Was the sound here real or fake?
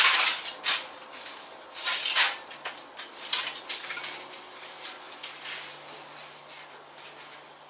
real